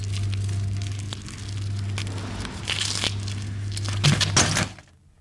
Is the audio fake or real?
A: real